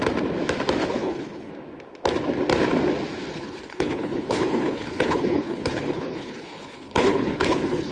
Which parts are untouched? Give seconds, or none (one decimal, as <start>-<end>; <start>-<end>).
0.0-0.8; 1.5-3.3

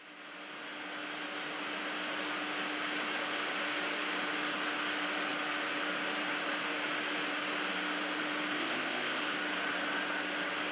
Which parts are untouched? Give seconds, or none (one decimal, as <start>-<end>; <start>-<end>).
0.0-8.6; 9.2-10.7